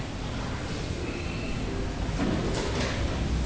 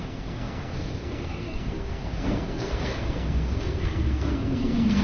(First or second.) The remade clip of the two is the second